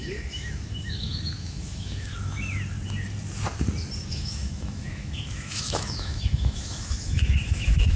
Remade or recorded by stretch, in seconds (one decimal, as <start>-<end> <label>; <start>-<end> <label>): 0.0-2.1 remade; 2.1-4.1 recorded; 4.1-8.0 remade